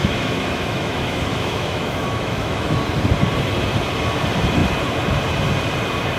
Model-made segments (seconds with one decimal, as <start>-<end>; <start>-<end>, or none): 0.0-2.8